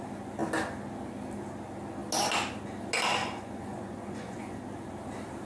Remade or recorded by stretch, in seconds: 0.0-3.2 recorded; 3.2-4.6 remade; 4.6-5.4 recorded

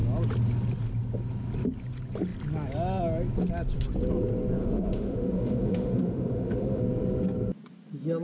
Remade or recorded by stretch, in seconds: 0.0-4.6 recorded; 4.6-6.8 remade; 6.8-8.2 recorded

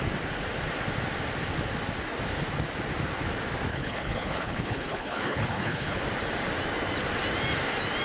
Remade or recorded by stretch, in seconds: 0.0-3.7 recorded; 3.7-6.0 remade; 6.0-8.0 recorded

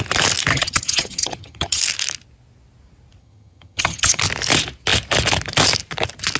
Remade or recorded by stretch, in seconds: 0.0-0.5 recorded; 0.5-1.8 remade; 1.8-3.2 recorded; 3.2-4.2 remade; 4.2-6.4 recorded